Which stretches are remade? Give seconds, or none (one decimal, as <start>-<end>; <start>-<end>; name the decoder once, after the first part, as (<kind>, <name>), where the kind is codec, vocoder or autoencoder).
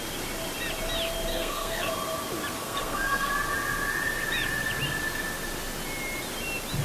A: 1.3-1.9 (codec, SNAC); 2.6-3.3